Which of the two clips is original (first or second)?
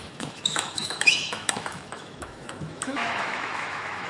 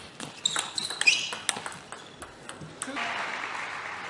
second